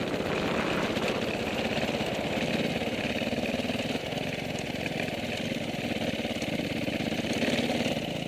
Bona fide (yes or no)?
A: yes